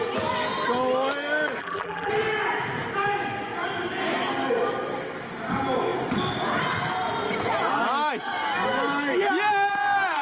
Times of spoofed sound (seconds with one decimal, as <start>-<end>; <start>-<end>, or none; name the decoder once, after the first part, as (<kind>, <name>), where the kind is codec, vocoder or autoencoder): 1.6-2.1 (vocoder, BigVGAN v2)